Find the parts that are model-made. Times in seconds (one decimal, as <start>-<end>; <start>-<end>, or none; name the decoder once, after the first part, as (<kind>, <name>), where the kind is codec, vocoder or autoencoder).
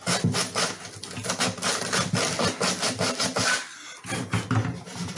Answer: none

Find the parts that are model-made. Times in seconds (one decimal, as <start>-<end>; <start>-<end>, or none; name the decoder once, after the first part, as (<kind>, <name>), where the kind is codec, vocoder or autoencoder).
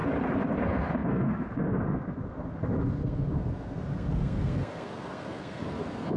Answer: 0.6-6.2 (codec, SNAC)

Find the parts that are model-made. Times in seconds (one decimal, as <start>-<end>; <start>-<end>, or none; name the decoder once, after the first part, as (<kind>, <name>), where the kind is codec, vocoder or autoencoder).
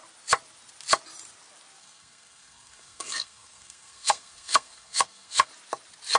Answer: 1.8-5.5 (codec, SNAC)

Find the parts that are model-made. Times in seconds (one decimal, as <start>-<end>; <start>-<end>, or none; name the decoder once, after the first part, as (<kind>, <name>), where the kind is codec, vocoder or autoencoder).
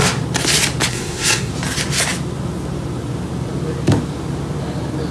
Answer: 0.9-1.5 (codec, SNAC)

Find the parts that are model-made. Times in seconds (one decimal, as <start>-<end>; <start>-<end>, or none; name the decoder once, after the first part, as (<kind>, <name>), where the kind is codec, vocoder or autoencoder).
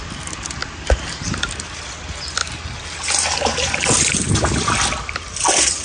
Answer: none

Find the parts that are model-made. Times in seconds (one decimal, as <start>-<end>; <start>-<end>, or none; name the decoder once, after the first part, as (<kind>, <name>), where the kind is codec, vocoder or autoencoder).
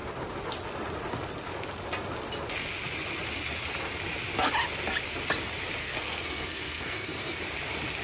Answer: 5.8-7.4 (codec, SNAC)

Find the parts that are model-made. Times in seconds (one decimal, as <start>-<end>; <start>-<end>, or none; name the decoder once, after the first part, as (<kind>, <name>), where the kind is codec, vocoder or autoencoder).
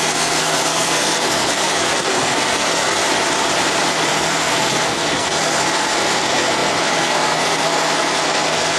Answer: 0.0-3.0 (codec, SNAC); 4.1-8.8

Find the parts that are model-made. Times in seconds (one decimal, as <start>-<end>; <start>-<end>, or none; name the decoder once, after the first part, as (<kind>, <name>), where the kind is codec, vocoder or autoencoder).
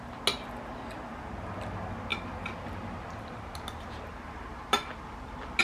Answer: none